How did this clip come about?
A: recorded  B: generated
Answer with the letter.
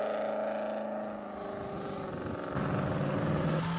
A